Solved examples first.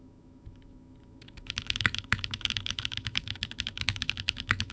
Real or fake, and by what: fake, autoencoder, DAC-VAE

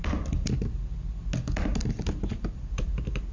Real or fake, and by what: real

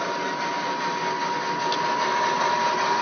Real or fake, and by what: real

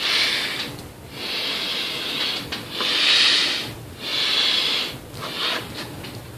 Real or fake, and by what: real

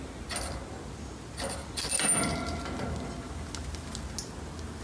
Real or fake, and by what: real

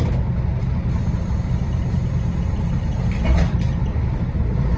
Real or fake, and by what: real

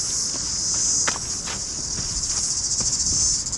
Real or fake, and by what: real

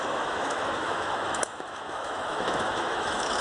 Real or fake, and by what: fake, autoencoder, DAC-VAE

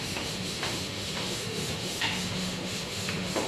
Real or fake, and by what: fake, autoencoder, DAC-VAE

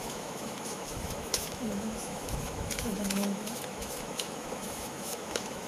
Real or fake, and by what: fake, autoencoder, DAC-VAE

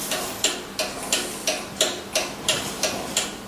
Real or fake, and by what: real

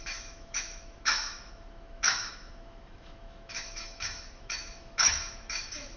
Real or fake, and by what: fake, autoencoder, DAC-VAE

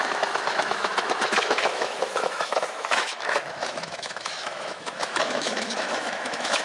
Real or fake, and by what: fake, autoencoder, DAC-VAE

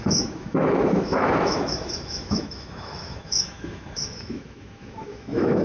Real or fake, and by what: fake, autoencoder, DAC-VAE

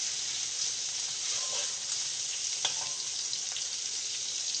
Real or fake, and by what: real